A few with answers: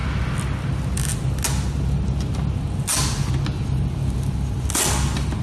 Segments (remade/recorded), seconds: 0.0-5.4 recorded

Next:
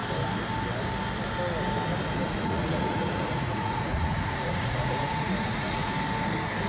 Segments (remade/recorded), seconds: 0.0-2.2 recorded; 2.2-5.9 remade; 5.9-6.7 recorded